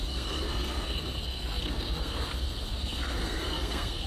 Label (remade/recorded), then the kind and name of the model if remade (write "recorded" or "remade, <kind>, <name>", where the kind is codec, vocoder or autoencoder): remade, codec, SNAC